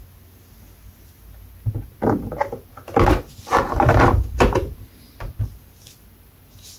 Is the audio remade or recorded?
recorded